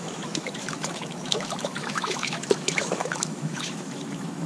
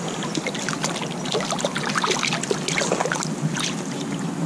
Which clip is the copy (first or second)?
first